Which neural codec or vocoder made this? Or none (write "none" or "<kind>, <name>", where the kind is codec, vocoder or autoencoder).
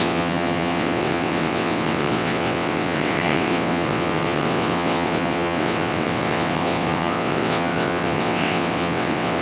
vocoder, WaveNeXt